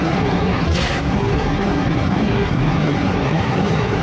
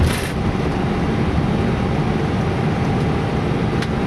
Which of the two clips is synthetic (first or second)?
first